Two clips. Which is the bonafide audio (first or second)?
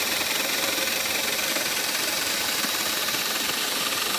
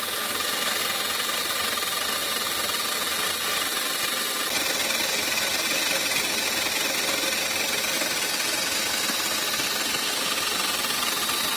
second